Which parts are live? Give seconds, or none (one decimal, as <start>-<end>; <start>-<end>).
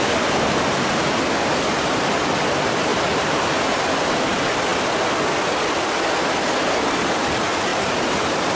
0.0-7.7